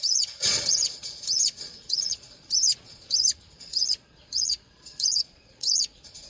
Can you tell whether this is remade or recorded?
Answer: remade